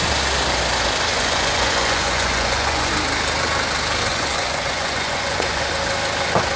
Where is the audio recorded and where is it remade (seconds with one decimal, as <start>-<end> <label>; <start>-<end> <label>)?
0.0-1.1 recorded; 1.1-2.9 remade; 2.9-4.1 recorded; 4.1-5.7 remade; 5.7-6.6 recorded